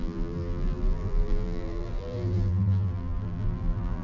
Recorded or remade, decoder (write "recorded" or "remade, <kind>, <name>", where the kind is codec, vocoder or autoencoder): remade, vocoder, BigVGAN v2